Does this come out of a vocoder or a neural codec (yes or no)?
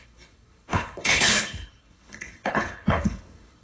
yes